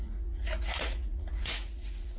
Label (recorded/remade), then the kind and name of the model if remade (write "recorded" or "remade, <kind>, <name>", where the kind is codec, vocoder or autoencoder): remade, vocoder, Vocos